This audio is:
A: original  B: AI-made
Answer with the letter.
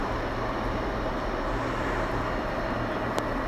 A